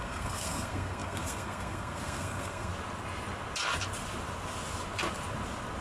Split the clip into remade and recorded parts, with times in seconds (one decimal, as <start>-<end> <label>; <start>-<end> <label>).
0.0-2.7 remade; 2.7-5.8 recorded